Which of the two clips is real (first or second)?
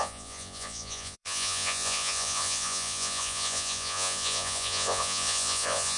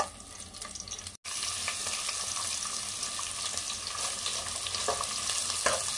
second